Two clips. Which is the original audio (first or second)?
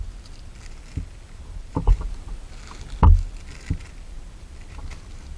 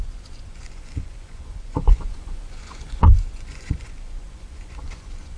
first